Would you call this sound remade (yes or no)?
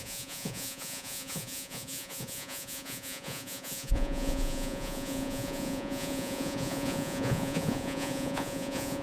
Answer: yes